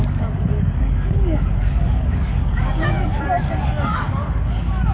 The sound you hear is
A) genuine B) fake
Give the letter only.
B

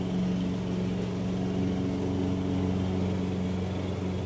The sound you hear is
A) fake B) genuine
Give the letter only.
B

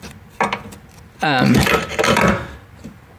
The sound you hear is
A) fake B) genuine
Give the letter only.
A